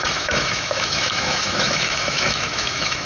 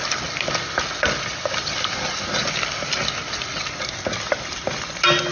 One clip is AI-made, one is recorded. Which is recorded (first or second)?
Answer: second